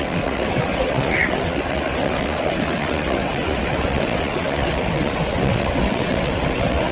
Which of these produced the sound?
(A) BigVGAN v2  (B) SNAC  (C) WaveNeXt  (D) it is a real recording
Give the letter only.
C